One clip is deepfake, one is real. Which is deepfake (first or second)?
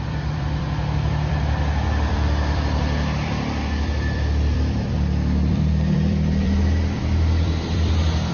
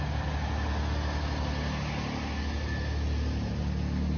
first